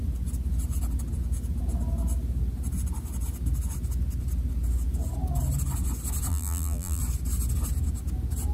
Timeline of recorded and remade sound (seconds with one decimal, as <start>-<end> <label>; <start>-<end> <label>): 0.0-6.3 recorded; 6.3-7.0 remade; 7.0-8.5 recorded